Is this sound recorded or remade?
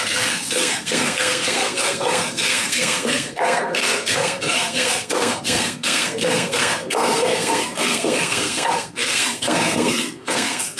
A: remade